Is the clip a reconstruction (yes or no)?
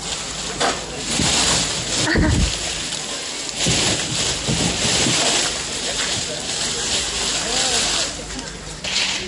no